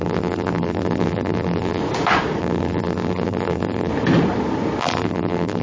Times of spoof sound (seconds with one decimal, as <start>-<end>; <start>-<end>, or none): 0.0-1.8; 2.4-3.9; 4.8-5.6